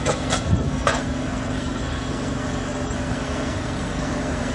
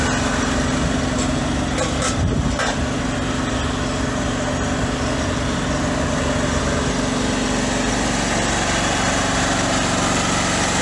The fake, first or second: first